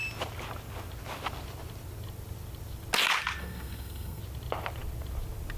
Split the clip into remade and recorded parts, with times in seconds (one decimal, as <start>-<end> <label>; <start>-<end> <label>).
0.0-3.4 recorded; 3.4-4.2 remade; 4.2-5.6 recorded